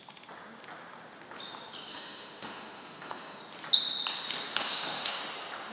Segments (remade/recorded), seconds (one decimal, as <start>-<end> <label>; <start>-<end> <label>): 0.0-1.9 recorded; 1.9-3.4 remade; 3.4-4.6 recorded; 4.6-5.2 remade; 5.2-5.7 recorded